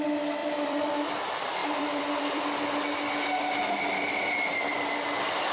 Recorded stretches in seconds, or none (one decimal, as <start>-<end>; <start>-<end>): 0.0-0.4; 0.9-1.6; 2.4-5.5